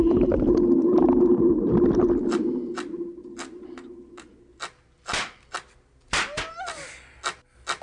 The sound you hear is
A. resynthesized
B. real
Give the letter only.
B